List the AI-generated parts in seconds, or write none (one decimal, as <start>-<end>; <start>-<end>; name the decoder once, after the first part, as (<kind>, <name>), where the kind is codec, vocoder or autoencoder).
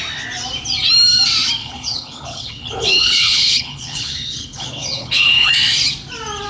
1.6-5.5 (codec, HILCodec)